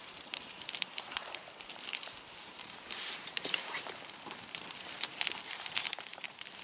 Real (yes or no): no